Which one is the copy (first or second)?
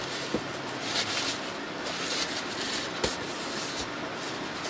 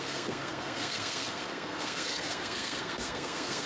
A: second